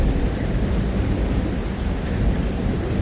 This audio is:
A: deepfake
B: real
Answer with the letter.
B